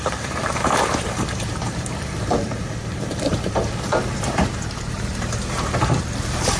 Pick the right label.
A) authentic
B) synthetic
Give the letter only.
B